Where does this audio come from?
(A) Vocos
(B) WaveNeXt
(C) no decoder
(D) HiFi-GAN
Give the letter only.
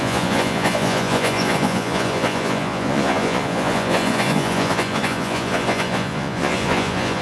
A